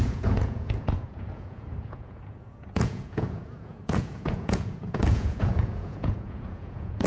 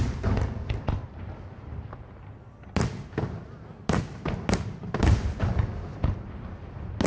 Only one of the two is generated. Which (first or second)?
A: first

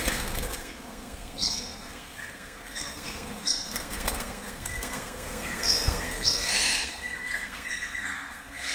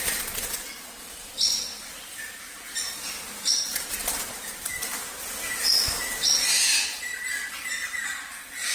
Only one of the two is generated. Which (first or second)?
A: first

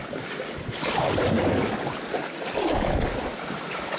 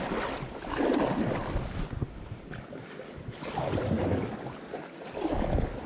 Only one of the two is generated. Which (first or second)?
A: first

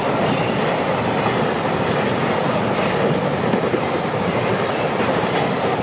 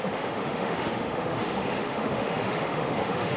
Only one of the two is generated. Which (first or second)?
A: second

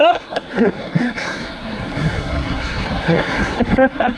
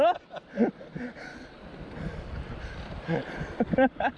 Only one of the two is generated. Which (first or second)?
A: first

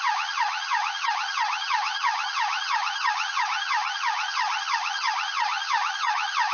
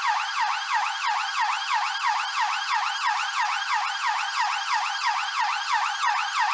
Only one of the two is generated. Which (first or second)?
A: first